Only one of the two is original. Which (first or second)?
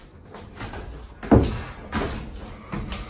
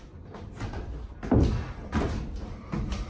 first